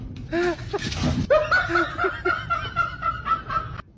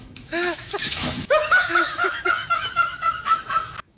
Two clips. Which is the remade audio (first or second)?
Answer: second